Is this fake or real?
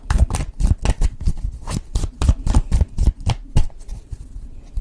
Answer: real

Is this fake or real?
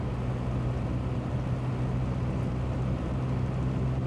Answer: real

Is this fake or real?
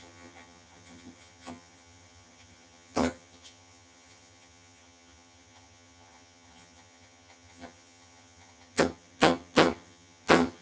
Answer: fake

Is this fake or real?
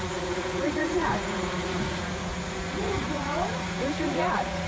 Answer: fake